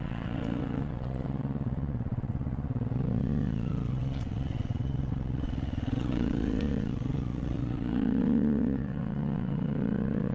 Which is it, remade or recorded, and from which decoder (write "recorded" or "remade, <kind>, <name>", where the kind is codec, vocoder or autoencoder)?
remade, vocoder, WaveNeXt